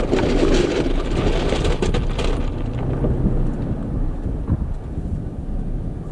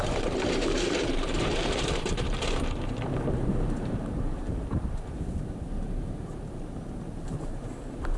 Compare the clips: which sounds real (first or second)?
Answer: first